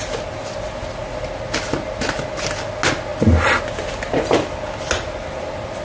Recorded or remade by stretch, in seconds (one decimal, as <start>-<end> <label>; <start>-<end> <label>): 0.0-5.8 recorded

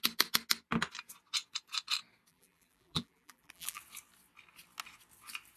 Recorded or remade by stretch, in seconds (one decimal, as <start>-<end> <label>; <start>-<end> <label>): 0.0-2.3 recorded; 2.3-3.8 remade; 3.8-5.6 recorded

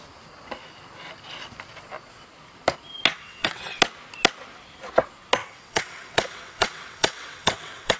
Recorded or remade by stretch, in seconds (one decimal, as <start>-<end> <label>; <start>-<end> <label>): 0.0-3.1 recorded; 3.1-3.8 remade; 3.8-5.4 recorded; 5.4-8.0 remade